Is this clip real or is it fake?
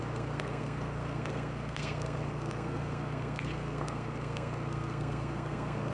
fake